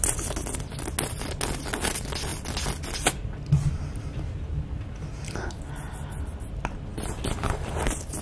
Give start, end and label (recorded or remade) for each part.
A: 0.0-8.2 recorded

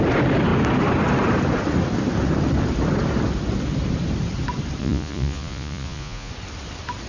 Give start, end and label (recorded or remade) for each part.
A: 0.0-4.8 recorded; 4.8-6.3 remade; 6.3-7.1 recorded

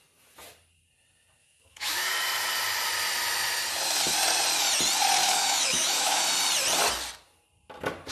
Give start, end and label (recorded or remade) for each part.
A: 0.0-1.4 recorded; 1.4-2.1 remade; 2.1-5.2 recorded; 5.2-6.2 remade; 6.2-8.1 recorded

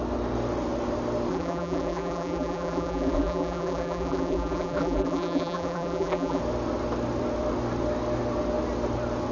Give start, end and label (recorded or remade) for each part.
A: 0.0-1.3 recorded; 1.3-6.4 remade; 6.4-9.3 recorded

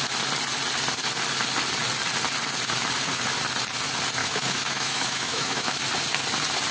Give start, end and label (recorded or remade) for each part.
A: 0.0-4.2 recorded; 4.2-5.8 remade; 5.8-6.7 recorded